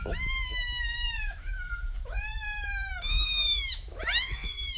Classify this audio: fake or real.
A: fake